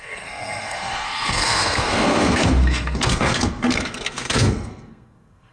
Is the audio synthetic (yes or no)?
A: yes